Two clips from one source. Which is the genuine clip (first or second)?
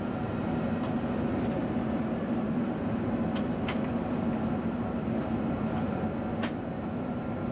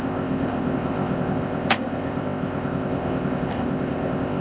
first